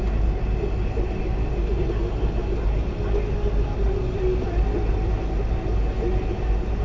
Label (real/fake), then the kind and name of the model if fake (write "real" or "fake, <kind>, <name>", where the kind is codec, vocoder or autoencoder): real